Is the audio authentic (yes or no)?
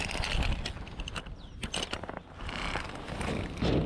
yes